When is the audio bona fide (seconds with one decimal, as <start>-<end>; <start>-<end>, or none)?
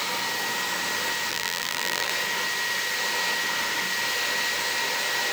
0.0-1.3; 2.1-5.3